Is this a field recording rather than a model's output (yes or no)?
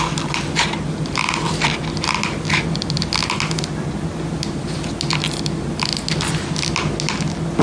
yes